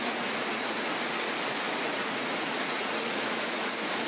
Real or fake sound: fake